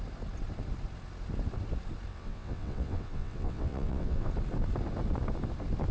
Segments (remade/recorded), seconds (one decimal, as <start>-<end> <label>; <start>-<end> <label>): 0.0-2.1 recorded; 2.1-4.3 remade; 4.3-5.9 recorded